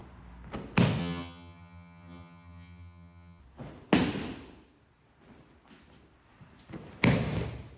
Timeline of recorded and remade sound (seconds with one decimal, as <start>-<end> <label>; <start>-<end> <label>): 0.0-1.0 recorded; 1.0-3.4 remade; 3.4-7.8 recorded